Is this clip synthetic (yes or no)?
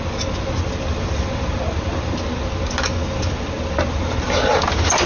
no